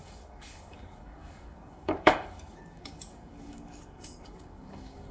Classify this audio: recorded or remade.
remade